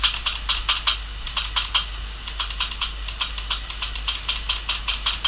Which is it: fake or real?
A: real